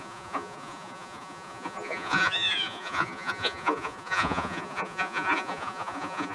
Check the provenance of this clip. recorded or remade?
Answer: remade